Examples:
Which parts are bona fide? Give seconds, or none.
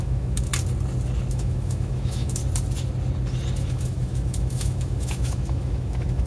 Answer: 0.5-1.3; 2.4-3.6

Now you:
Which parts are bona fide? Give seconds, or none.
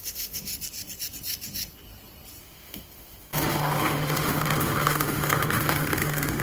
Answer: 0.5-2.4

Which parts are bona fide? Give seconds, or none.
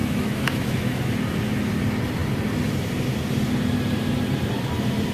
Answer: 1.2-5.1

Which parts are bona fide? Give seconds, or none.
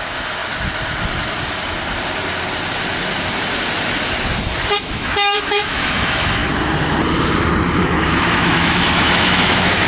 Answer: 0.4-4.8; 6.4-7.8